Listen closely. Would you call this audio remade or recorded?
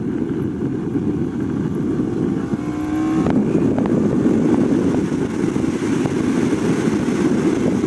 recorded